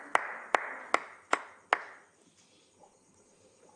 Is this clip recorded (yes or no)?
yes